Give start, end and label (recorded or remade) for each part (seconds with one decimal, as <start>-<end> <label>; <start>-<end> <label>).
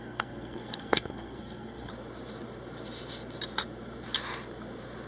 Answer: 0.0-1.9 remade; 1.9-5.1 recorded